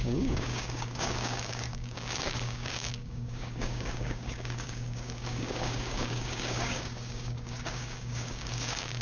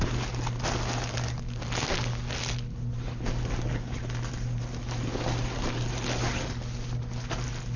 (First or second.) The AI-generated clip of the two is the first